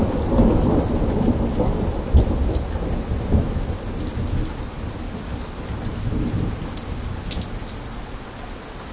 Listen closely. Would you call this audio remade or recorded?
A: recorded